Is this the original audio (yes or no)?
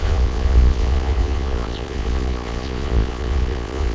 no